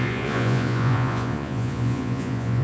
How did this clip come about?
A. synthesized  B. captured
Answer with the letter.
A